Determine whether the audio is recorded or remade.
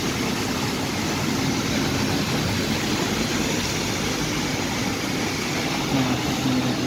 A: recorded